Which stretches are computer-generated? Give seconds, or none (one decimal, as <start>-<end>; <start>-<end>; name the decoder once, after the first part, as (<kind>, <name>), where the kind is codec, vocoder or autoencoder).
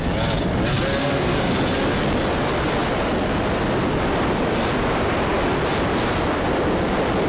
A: 1.0-1.5 (codec, SNAC)